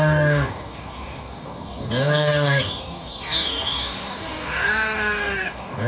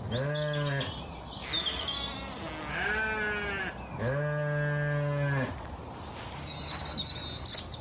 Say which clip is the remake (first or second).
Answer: first